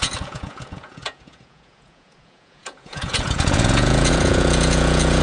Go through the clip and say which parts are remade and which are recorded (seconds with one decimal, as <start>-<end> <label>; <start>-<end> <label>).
0.0-5.2 remade